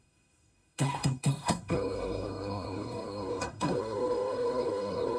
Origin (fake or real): fake